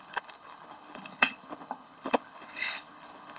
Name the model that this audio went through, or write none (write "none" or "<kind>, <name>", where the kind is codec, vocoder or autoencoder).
codec, HILCodec